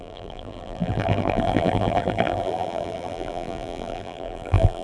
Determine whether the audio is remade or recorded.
remade